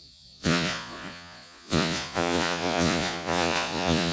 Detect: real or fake fake